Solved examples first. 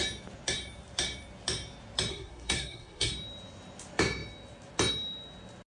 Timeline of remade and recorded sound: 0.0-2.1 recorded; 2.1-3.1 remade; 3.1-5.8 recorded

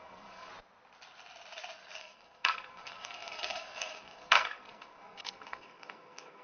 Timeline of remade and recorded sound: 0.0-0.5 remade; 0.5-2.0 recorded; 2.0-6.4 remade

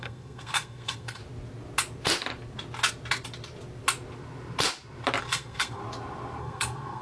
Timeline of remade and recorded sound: 0.0-1.2 remade; 1.2-5.2 recorded; 5.2-5.8 remade; 5.8-6.4 recorded; 6.4-7.0 remade

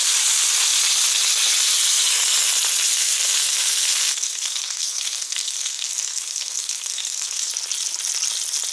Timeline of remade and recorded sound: 0.0-2.9 recorded; 2.9-7.5 remade; 7.5-8.7 recorded

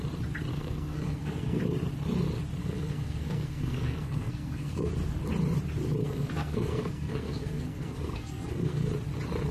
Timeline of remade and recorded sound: 0.0-0.5 recorded; 0.5-1.6 remade; 1.6-2.6 recorded; 2.6-4.9 remade; 4.9-6.0 recorded; 6.0-8.9 remade; 8.9-9.5 recorded

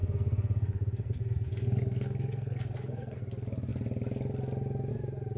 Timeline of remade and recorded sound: 0.0-3.2 remade; 3.2-5.4 recorded